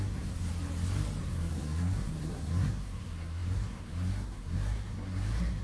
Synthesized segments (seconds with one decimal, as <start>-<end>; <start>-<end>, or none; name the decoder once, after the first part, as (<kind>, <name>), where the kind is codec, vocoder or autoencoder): 0.0-0.5 (codec, SNAC); 1.2-5.6